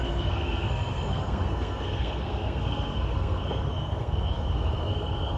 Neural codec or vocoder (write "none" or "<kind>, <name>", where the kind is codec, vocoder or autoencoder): codec, SNAC